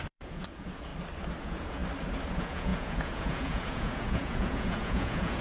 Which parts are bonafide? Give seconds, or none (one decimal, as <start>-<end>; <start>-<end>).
0.9-1.4; 1.8-2.3